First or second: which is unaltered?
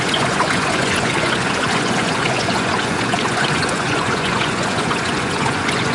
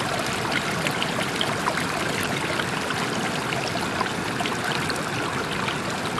second